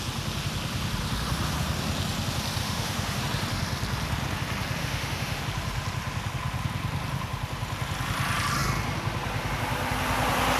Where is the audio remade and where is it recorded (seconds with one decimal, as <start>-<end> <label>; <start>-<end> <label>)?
0.0-2.6 recorded; 2.6-3.2 remade; 3.2-4.8 recorded; 4.8-5.4 remade; 5.4-10.6 recorded